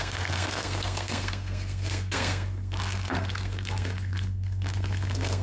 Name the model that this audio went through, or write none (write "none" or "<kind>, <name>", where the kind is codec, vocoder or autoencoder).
codec, SNAC